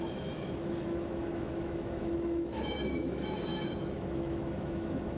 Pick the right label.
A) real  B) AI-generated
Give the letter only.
B